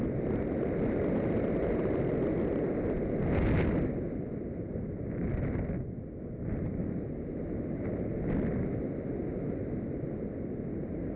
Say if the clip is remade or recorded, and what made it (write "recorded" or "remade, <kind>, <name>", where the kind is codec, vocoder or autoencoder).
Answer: recorded